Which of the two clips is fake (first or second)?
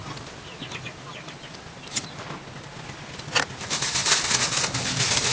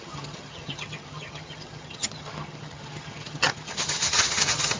second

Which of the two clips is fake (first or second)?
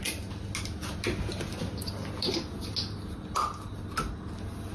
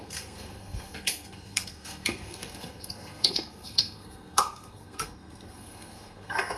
second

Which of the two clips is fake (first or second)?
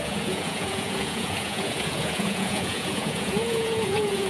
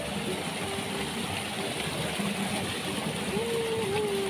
first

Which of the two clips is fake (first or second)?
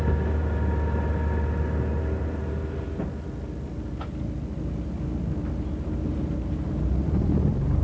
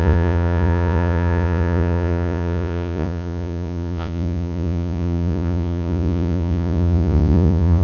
second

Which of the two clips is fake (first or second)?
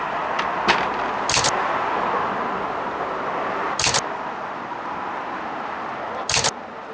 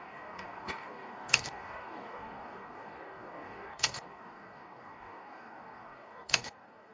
second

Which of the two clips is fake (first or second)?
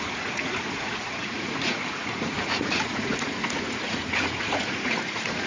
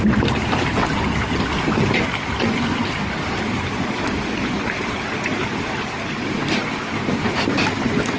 first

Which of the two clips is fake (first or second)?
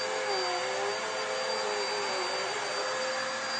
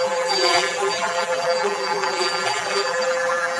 second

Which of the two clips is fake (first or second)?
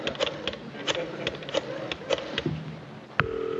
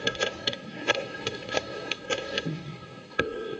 second